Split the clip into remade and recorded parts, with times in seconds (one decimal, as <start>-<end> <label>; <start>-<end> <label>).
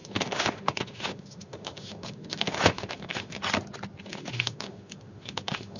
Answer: 0.0-3.4 remade; 3.4-4.0 recorded; 4.0-5.8 remade